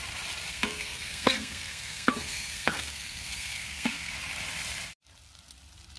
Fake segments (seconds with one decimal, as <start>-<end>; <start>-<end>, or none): 0.5-4.1

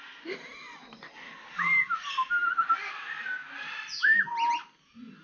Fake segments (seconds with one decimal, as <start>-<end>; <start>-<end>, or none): 0.5-1.7